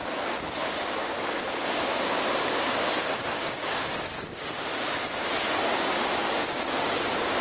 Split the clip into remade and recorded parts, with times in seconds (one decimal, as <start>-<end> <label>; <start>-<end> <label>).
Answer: 0.0-7.4 remade